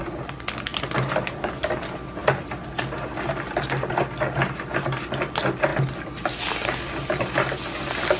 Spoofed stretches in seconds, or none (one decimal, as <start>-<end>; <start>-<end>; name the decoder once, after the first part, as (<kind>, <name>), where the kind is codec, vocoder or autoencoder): 0.7-1.5 (vocoder, BigVGAN v2)